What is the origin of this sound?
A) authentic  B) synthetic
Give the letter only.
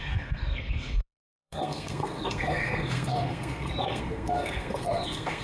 B